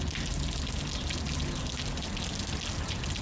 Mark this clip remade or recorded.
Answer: recorded